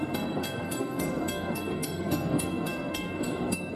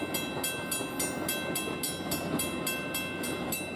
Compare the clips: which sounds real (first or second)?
second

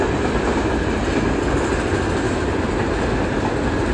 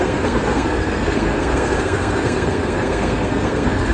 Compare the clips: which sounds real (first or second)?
first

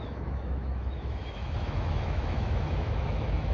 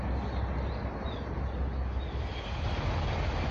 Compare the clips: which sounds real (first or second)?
second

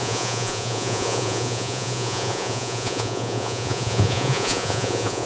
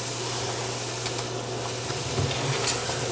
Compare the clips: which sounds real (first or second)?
second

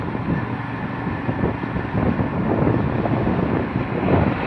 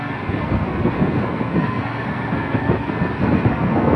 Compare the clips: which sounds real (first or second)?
first